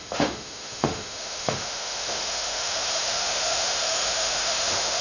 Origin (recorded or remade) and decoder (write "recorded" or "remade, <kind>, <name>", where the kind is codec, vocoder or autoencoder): remade, autoencoder, DAC-VAE